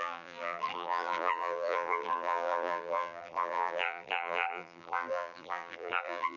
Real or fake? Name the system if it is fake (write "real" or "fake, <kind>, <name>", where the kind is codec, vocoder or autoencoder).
fake, vocoder, BigVGAN v2